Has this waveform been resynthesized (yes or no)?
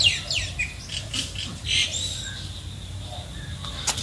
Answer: no